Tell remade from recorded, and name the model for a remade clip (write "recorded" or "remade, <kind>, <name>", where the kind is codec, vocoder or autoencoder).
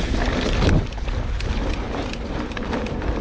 recorded